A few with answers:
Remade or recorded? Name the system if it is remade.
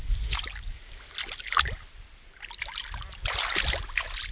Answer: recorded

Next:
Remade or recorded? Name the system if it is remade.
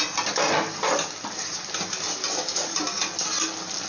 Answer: recorded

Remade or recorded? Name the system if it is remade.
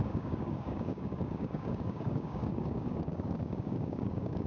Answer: remade, codec, DAC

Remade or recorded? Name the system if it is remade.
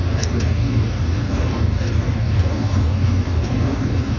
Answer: remade, codec, DAC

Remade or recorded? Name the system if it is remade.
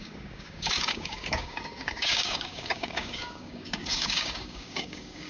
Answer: remade, codec, DAC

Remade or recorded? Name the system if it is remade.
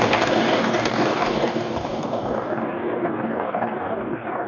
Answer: remade, codec, DAC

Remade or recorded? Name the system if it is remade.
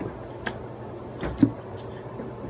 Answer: recorded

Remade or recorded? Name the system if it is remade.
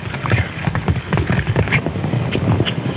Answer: remade, codec, DAC